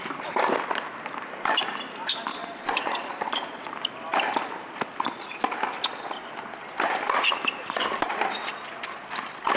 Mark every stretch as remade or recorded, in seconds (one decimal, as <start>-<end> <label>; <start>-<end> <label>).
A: 0.0-2.3 recorded; 2.3-3.6 remade; 3.6-9.6 recorded